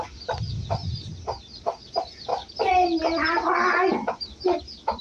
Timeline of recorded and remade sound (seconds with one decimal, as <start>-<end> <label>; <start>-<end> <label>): 0.0-2.3 recorded; 2.3-3.5 remade; 3.5-5.0 recorded